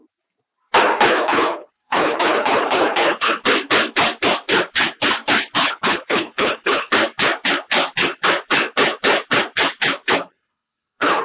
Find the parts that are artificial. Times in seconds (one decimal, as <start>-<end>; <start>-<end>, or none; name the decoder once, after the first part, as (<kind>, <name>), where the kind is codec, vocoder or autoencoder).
1.1-3.3 (codec, HILCodec); 5.6-6.9; 10.2-11.2